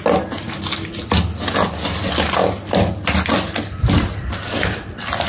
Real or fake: real